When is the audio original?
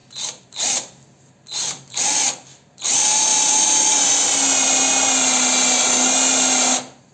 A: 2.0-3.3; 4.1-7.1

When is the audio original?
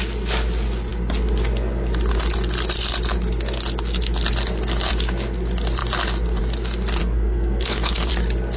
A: 0.0-7.0; 8.1-8.6